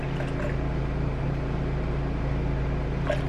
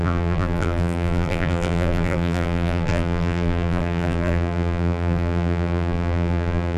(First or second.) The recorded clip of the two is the first